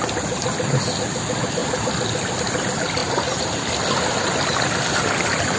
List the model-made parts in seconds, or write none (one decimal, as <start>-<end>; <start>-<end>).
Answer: 1.6-2.3

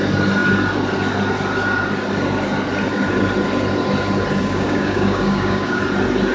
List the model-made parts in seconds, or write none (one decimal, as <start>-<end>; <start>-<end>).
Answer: 4.4-5.8